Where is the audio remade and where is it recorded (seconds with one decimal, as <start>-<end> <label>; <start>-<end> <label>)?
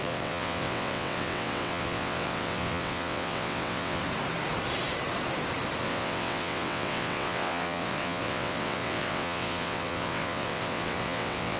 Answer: 0.0-4.0 remade; 4.0-5.8 recorded; 5.8-11.6 remade